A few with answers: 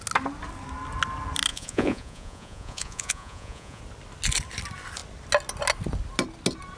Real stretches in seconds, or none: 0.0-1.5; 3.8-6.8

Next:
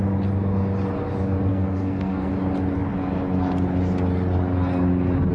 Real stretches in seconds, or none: 0.0-1.5; 2.3-5.3

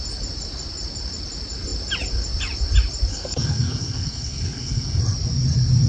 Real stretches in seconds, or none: 0.0-3.1; 5.0-5.9

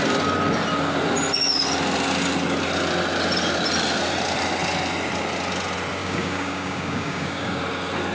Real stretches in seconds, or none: 0.0-6.0; 7.6-8.1

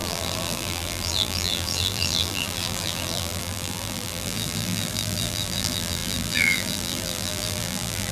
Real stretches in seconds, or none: none

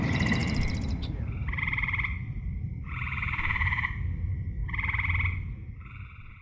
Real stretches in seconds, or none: 4.6-5.7

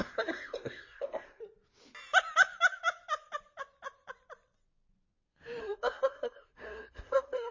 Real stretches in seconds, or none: 1.4-5.6